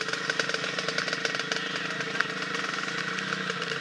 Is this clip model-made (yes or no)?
no